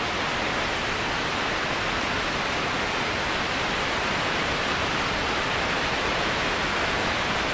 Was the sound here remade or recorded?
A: recorded